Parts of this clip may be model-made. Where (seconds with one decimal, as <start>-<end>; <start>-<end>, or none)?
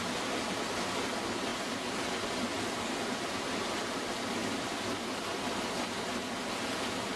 none